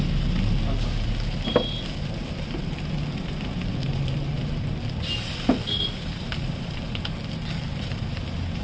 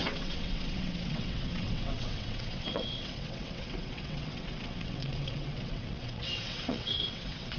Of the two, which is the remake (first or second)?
second